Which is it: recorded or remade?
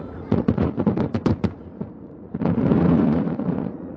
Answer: remade